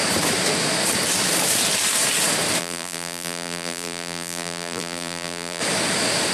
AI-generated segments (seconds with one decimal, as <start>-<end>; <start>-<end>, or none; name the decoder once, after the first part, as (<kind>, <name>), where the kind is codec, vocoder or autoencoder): 2.6-5.6 (vocoder, BigVGAN v2)